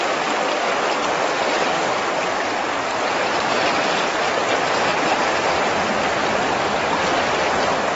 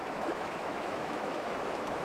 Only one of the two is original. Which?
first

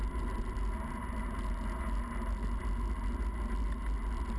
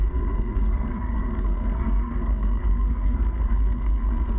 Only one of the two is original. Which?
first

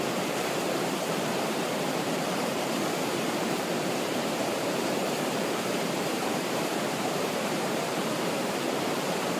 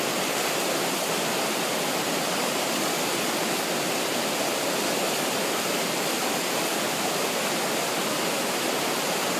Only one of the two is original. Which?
second